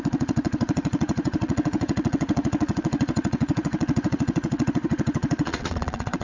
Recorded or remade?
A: remade